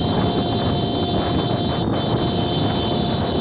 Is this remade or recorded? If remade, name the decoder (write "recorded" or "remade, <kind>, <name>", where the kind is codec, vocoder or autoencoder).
recorded